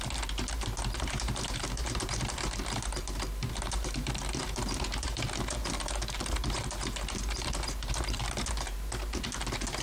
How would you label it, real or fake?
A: fake